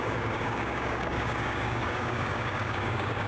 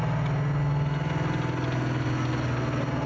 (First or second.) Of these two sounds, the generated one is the first